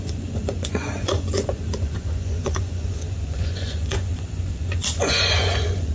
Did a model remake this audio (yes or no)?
yes